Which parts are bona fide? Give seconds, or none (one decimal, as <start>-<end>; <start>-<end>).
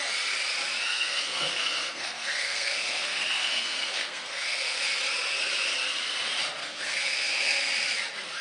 0.0-0.8; 4.8-6.6; 7.7-8.4